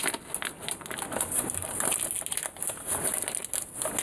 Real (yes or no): yes